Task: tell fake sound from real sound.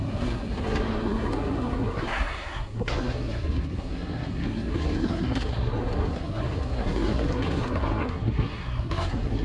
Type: fake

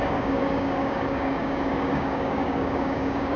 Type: fake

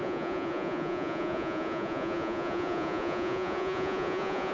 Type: fake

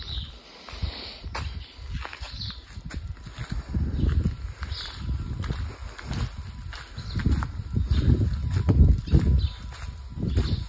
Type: real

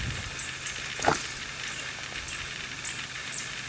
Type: real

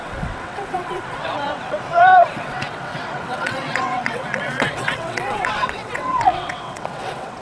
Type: fake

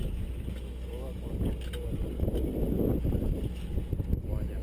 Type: real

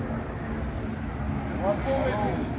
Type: real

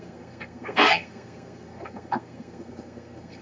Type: fake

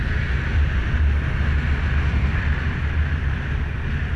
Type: real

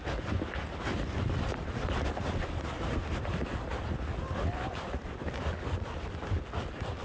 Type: real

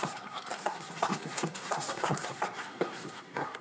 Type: fake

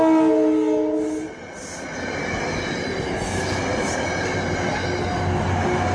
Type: real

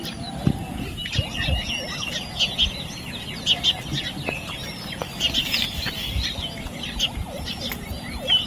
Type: real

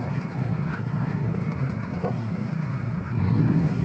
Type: fake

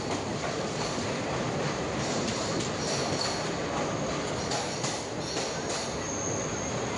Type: real